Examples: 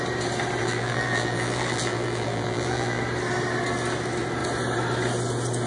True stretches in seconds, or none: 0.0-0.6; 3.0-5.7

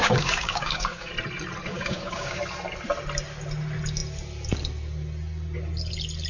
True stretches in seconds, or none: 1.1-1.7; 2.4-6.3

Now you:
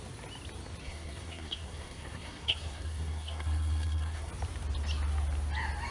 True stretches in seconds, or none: 0.0-0.8; 4.3-5.9

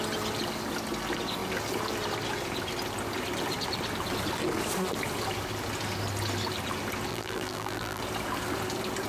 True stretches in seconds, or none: 0.0-7.1; 8.0-9.1

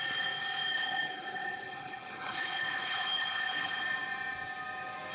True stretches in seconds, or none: 0.0-0.7; 3.8-5.1